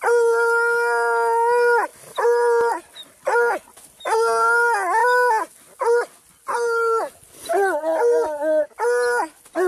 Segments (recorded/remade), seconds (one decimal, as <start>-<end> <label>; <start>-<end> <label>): 0.0-9.7 recorded

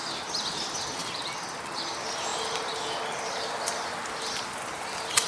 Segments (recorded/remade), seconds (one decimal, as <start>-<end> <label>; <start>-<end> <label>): 0.0-1.0 recorded; 1.0-1.8 remade; 1.8-5.3 recorded